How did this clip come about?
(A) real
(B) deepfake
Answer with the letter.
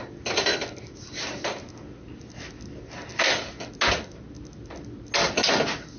A